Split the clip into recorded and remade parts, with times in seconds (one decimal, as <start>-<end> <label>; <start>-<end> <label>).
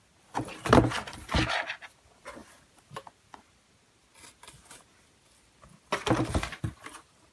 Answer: 0.0-7.3 recorded